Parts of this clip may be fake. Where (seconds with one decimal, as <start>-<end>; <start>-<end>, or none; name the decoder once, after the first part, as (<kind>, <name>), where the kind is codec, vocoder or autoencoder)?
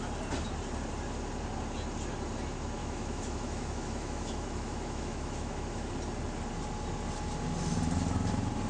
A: 2.8-5.9 (autoencoder, DAC-VAE)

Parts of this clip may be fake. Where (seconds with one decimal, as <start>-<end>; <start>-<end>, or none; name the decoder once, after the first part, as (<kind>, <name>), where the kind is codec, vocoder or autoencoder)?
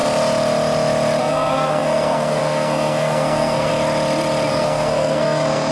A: 1.2-3.7 (codec, SNAC); 4.5-5.7